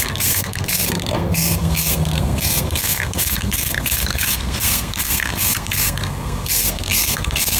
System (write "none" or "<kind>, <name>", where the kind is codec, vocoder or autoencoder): codec, SNAC